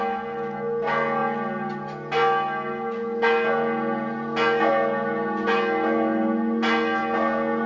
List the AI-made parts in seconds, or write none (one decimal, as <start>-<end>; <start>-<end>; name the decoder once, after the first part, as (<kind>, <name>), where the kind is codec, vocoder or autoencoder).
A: none